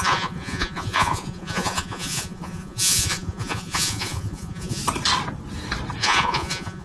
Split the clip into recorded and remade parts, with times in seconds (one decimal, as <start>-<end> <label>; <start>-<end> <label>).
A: 0.0-4.8 remade; 4.8-6.0 recorded; 6.0-6.8 remade